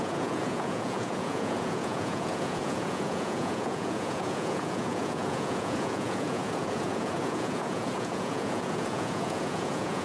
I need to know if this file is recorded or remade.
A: remade